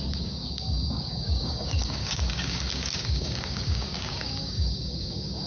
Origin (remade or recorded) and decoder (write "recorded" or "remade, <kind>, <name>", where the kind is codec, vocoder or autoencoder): remade, codec, DAC